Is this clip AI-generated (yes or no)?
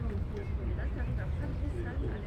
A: no